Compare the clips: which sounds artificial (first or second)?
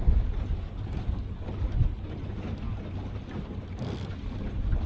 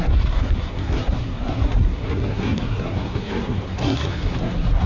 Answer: second